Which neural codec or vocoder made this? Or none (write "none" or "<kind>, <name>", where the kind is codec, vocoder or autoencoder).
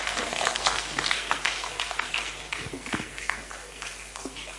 codec, SNAC